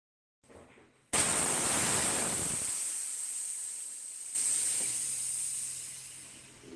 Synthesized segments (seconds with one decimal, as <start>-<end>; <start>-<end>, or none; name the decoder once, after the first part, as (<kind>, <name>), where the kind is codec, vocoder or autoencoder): 1.0-1.5 (vocoder, WaveNeXt)